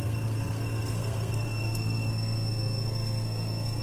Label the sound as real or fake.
fake